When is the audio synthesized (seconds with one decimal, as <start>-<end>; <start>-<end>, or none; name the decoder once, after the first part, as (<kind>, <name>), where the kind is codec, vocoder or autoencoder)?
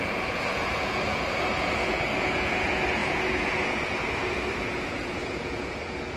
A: 0.0-6.2 (vocoder, Vocos)